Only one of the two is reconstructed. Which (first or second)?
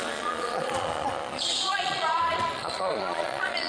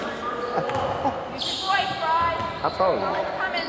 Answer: first